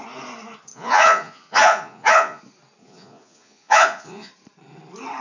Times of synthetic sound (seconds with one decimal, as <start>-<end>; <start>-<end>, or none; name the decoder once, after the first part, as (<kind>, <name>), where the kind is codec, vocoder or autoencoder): 0.7-2.4 (vocoder, Vocos); 2.8-4.3